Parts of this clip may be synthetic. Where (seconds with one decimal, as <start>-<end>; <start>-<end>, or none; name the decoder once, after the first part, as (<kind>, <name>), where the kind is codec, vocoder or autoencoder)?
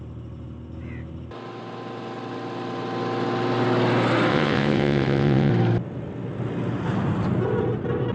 4.3-5.5 (vocoder, WaveNeXt)